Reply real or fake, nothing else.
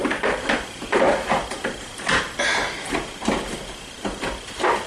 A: real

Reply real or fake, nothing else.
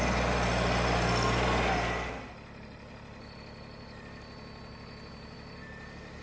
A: real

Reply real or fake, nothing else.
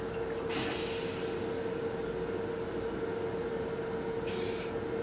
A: real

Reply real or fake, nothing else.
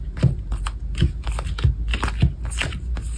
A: real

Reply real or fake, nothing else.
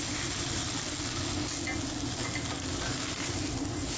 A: real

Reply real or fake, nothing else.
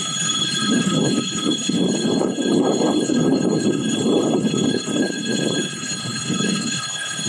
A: fake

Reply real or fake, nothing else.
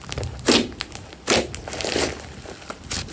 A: real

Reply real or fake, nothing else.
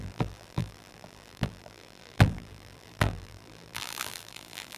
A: fake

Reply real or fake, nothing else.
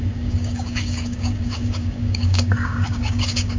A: fake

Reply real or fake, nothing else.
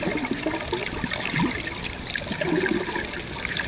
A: real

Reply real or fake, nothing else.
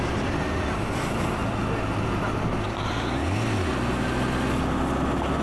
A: real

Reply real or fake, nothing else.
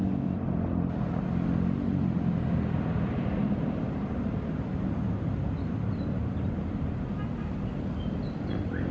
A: real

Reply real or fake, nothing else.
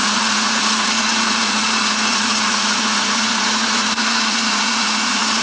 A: fake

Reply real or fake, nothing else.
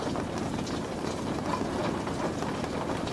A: real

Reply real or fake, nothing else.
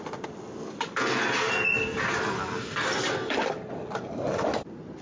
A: real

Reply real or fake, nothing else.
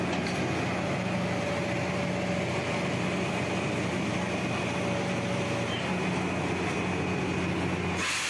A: real